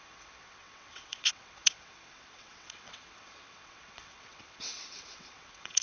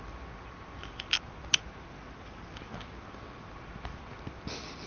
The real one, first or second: second